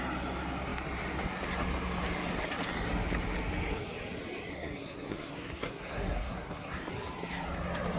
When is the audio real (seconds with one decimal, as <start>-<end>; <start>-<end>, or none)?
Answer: 0.0-4.5; 6.9-8.0